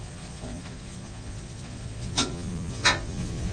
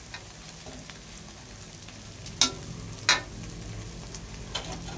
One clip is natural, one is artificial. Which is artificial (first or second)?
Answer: first